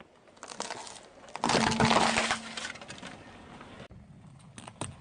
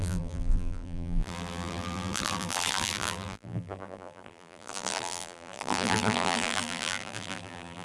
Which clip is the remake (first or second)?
second